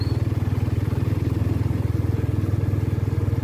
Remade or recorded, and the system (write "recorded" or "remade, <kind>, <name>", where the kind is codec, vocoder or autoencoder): recorded